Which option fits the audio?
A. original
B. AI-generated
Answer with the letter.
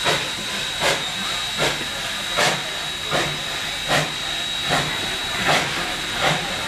A